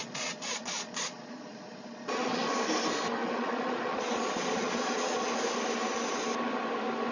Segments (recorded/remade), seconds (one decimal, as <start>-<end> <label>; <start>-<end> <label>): 0.0-2.4 remade; 2.4-3.2 recorded; 3.2-5.3 remade; 5.3-7.1 recorded